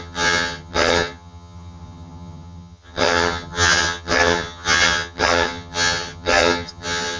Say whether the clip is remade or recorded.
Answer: remade